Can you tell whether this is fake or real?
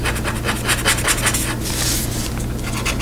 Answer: real